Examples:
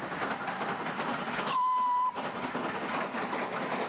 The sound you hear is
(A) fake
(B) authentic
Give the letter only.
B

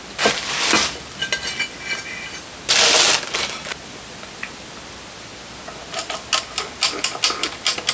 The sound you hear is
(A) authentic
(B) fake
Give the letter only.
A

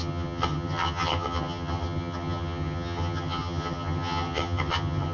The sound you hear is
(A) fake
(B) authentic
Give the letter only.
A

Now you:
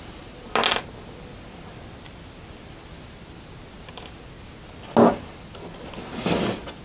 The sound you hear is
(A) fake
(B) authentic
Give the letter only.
B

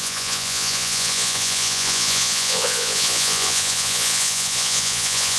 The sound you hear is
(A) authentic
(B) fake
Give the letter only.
B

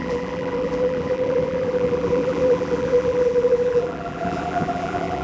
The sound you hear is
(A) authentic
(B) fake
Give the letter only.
B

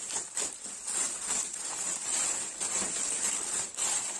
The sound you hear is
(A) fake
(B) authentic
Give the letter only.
A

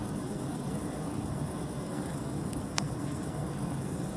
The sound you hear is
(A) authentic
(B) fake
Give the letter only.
B